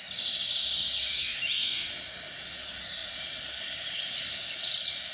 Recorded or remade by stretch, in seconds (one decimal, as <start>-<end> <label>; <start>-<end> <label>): 0.0-1.1 recorded; 1.1-1.9 remade; 1.9-5.1 recorded